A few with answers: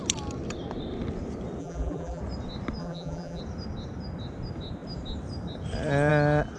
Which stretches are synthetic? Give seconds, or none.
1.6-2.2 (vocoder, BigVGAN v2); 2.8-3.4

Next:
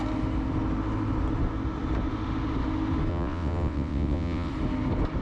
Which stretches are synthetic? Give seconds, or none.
3.1-4.5 (vocoder, WaveNeXt)